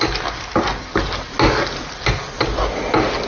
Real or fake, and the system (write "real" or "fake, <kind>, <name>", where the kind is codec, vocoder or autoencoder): real